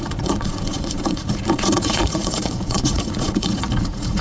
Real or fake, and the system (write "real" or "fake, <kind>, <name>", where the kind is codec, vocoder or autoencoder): fake, vocoder, Vocos